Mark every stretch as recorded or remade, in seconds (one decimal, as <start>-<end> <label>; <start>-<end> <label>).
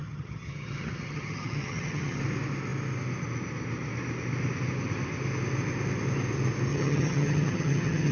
0.0-2.2 remade; 2.2-6.7 recorded; 6.7-8.1 remade